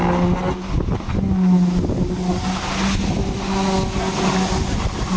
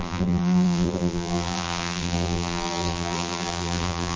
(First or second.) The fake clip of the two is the second